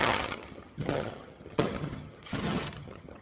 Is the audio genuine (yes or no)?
no